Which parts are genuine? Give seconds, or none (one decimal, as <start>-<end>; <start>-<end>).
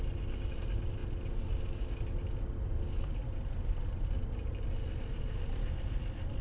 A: 0.0-6.4